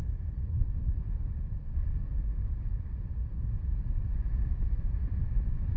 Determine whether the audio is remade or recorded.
recorded